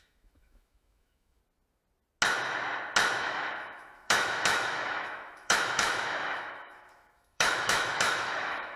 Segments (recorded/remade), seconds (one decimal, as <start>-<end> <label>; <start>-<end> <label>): 0.0-1.4 remade; 1.4-3.2 recorded; 3.2-8.8 remade